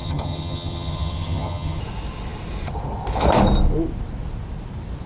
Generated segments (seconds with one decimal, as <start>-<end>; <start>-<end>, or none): 0.0-1.8